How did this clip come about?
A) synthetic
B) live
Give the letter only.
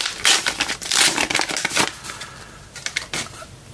B